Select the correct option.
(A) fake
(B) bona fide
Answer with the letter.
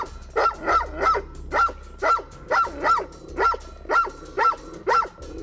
B